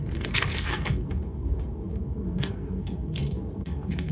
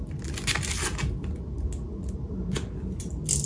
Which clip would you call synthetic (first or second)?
first